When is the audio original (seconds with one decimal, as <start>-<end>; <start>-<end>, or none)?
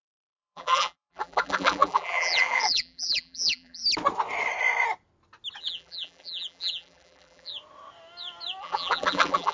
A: 3.8-5.6; 7.5-8.6